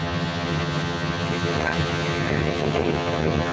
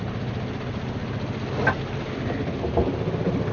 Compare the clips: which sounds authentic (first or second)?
second